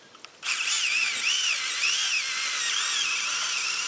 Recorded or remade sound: recorded